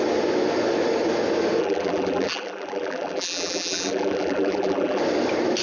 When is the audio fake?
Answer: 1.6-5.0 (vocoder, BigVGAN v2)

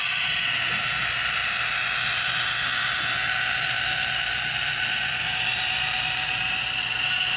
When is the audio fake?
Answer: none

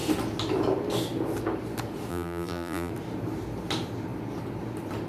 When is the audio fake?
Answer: 2.1-2.9 (vocoder, BigVGAN v2)

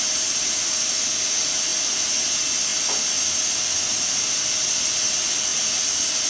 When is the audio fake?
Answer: none

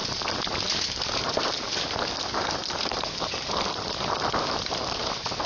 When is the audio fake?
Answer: 2.6-3.5 (vocoder, BigVGAN v2)